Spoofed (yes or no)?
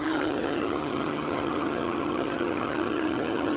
yes